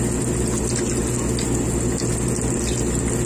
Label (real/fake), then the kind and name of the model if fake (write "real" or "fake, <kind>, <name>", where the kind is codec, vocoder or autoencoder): real